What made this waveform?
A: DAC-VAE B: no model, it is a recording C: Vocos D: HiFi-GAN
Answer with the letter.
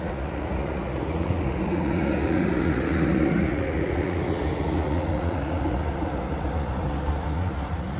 C